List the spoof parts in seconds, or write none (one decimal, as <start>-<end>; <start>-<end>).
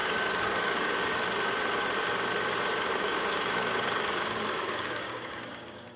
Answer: 0.0-0.9; 2.9-6.0